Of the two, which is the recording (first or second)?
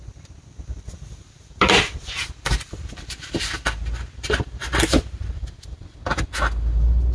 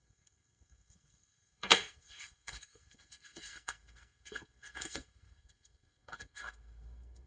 first